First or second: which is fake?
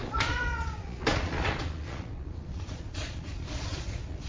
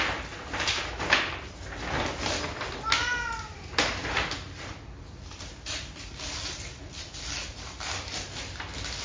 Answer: first